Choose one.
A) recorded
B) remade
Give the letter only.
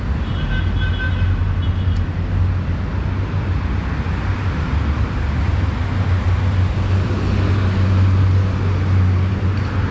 A